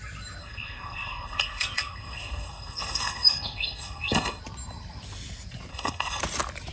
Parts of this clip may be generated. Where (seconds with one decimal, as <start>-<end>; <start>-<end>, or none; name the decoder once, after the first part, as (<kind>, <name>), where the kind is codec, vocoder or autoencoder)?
0.4-4.4 (codec, SNAC); 5.7-6.2